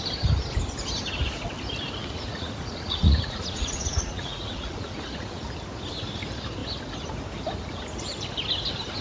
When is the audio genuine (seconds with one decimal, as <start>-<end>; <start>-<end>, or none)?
0.0-2.0; 5.5-9.0

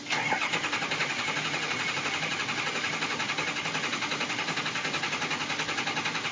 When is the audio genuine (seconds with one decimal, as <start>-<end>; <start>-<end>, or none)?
0.0-6.3

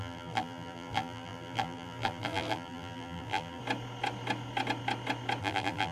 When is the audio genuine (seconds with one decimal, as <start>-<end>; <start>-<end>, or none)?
3.6-5.4

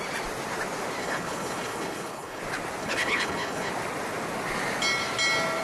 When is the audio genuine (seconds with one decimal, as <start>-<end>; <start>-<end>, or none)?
0.0-1.0; 2.4-2.8; 3.7-5.6